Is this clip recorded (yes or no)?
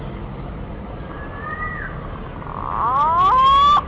yes